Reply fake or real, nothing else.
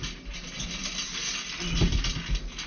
real